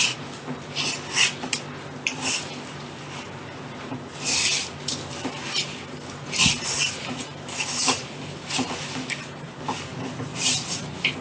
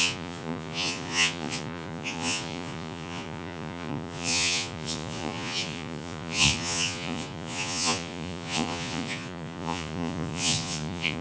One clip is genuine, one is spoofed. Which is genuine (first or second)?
first